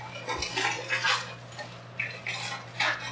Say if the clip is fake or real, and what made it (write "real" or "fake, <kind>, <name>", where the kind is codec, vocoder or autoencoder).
real